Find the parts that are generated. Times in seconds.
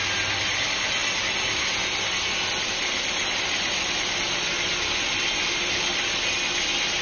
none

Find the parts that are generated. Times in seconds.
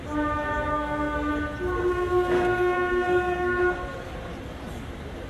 0.7-1.3 (codec, SNAC); 1.8-3.6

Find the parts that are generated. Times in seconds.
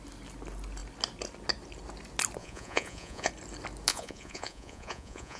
2.4-3.3 (vocoder, Vocos); 3.9-5.4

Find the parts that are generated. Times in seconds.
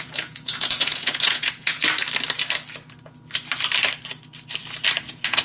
0.0-1.8 (vocoder, Vocos); 5.0-5.4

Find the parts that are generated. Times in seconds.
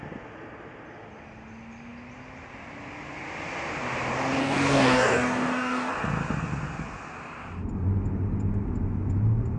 4.4-5.9 (codec, DAC)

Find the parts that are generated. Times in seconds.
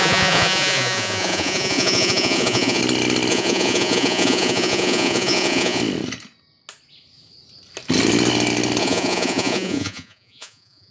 0.0-2.8 (vocoder, Vocos); 3.3-5.8; 8.8-10.9